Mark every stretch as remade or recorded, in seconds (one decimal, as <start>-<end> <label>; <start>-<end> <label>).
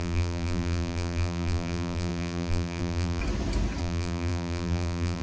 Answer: 0.0-3.2 remade; 3.2-3.8 recorded; 3.8-5.2 remade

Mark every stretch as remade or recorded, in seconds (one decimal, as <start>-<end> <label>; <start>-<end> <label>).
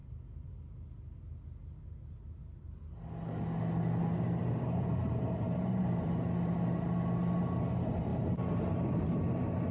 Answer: 0.0-4.4 recorded; 4.4-5.6 remade; 5.6-8.1 recorded; 8.1-9.2 remade; 9.2-9.7 recorded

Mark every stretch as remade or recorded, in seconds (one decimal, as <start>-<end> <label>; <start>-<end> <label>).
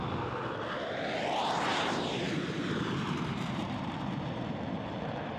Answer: 0.0-1.7 recorded; 1.7-4.9 remade; 4.9-5.4 recorded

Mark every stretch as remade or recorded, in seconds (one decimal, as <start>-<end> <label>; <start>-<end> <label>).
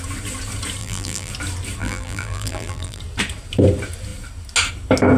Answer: 0.0-0.8 recorded; 0.8-1.3 remade; 1.3-1.8 recorded; 1.8-3.0 remade; 3.0-5.2 recorded